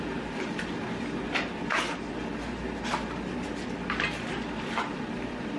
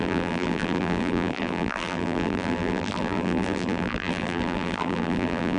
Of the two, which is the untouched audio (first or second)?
first